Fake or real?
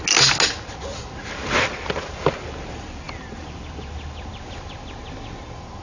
real